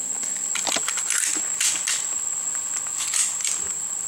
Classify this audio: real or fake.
real